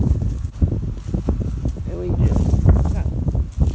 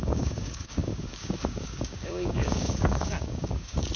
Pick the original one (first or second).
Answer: first